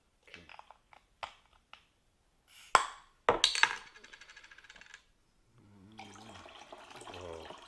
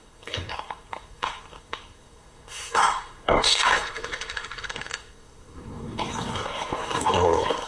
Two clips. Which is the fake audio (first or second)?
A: second